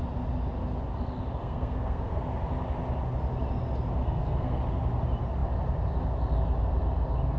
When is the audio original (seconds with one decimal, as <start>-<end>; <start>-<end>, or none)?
0.0-1.4; 2.2-4.0; 4.6-7.4